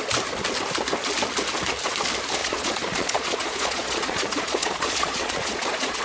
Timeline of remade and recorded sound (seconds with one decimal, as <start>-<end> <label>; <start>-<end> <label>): 0.0-2.4 recorded; 2.4-6.0 remade